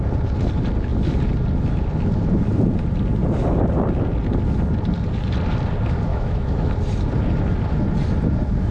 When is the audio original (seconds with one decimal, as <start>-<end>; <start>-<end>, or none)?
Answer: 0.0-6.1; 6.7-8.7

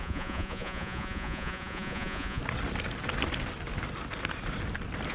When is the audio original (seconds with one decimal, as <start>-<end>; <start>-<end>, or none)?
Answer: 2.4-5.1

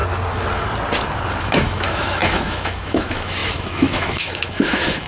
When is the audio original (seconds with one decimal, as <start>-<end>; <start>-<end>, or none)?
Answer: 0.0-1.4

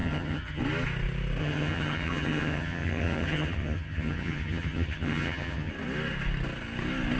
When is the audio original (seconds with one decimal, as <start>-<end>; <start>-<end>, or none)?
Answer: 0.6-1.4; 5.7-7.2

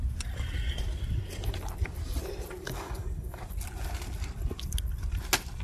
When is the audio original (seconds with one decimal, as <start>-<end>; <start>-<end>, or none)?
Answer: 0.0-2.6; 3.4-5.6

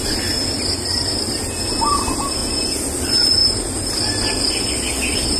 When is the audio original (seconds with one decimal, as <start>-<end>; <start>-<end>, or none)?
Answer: 0.0-3.4; 4.5-5.4